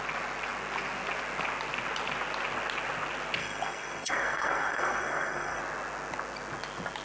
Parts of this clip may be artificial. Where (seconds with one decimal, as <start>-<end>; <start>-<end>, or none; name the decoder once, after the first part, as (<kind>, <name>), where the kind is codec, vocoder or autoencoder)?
3.4-5.6 (codec, SNAC)